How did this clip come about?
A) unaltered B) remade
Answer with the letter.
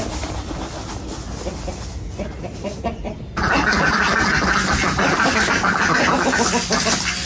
A